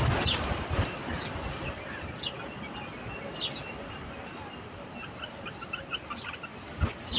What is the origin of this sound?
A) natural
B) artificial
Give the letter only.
A